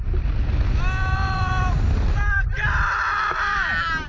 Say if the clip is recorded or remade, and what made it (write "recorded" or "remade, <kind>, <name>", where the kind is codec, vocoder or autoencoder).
remade, vocoder, BigVGAN v2